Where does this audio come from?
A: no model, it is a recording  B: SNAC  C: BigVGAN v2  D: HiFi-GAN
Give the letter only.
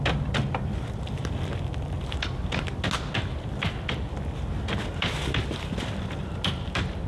A